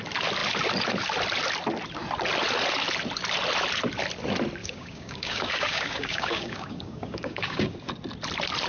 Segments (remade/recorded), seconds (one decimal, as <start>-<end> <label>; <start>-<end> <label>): 0.0-4.6 recorded; 4.6-7.7 remade; 7.7-8.7 recorded